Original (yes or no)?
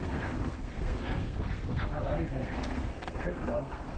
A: no